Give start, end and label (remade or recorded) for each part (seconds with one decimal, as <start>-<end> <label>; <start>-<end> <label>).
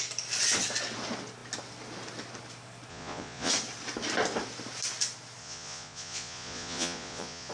0.0-2.9 recorded; 2.9-3.5 remade; 3.5-5.4 recorded; 5.4-7.5 remade